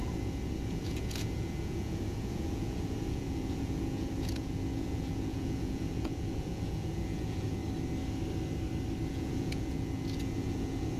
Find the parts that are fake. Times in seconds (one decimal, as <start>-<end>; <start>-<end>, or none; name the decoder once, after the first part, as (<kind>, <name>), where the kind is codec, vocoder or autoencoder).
0.0-7.6 (vocoder, Vocos); 9.1-11.0